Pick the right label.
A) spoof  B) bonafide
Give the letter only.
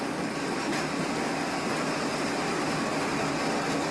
B